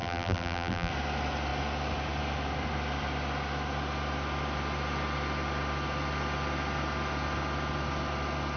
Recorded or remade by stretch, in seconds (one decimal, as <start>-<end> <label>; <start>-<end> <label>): 0.0-0.9 remade; 0.9-8.6 recorded